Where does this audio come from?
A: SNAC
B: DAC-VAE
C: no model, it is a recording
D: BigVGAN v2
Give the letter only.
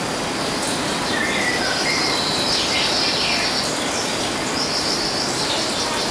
D